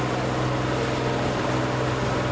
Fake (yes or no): no